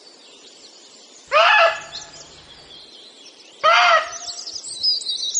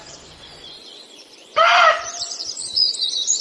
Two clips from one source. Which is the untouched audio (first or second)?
first